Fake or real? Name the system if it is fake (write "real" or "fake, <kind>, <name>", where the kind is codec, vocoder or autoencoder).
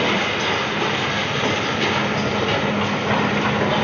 real